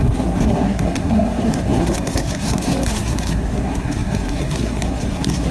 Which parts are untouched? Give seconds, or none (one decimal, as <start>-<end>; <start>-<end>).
none